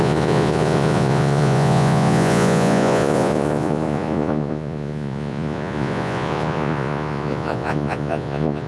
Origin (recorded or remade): remade